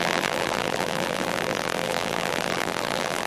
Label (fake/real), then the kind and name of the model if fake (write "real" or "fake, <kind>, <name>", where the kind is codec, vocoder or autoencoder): fake, vocoder, BigVGAN v2